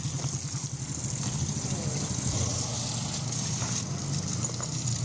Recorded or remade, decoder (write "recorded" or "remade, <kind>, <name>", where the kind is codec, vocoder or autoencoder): recorded